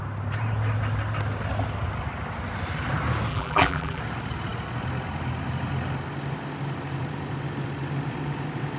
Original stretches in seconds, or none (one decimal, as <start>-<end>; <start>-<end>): 0.0-3.3; 4.0-8.8